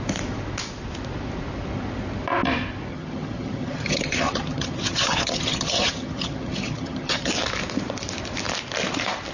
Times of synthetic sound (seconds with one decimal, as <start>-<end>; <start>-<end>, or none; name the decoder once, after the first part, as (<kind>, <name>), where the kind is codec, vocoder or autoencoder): 2.9-7.3 (vocoder, HiFi-GAN)